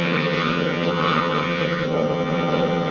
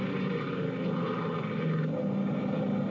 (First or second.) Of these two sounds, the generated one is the first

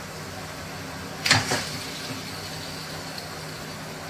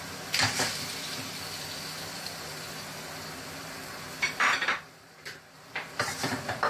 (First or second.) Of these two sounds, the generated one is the second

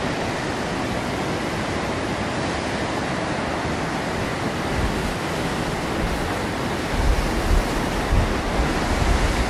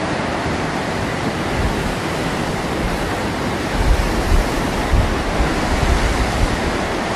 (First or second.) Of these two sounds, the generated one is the second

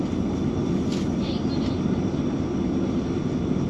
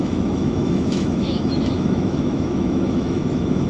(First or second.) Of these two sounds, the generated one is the second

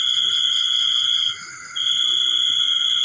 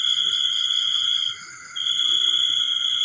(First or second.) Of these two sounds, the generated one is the second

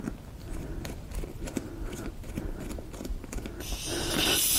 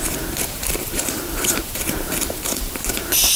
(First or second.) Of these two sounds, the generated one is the second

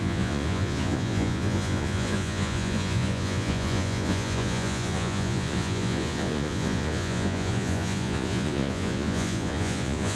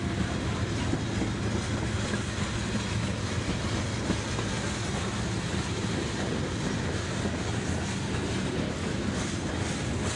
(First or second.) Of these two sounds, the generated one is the first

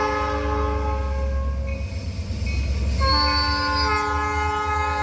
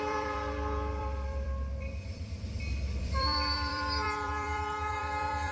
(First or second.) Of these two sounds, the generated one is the second